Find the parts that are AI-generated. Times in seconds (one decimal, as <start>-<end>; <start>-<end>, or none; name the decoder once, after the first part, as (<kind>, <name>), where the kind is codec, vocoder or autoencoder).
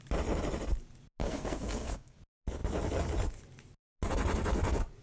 1.2-2.2 (codec, SNAC)